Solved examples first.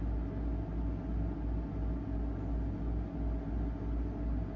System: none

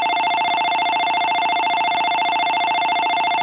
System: none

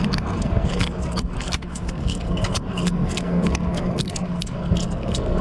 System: codec, SNAC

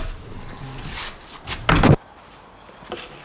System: none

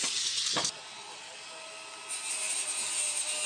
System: none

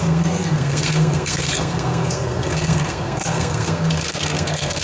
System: codec, SNAC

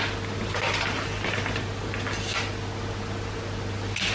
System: none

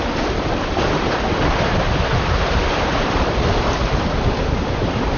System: vocoder, BigVGAN v2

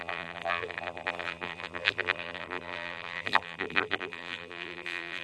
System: vocoder, BigVGAN v2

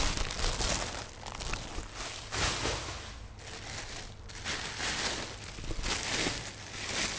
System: none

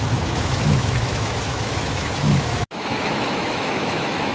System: autoencoder, DAC-VAE